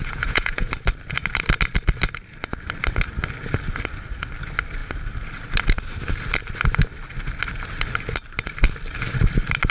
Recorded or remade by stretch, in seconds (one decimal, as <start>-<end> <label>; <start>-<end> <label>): 0.0-0.7 remade; 0.7-9.7 recorded